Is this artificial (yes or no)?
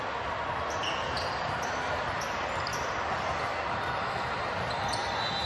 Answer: no